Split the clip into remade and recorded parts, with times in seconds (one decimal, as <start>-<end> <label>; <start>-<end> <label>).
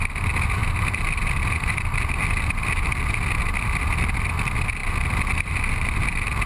0.0-6.5 recorded